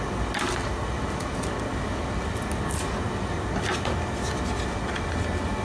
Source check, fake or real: real